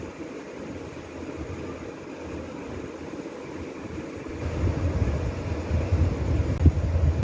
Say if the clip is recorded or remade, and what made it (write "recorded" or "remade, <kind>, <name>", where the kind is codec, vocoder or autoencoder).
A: recorded